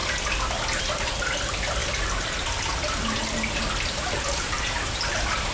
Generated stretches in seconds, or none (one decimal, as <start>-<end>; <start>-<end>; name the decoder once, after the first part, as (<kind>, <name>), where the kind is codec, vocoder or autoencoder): none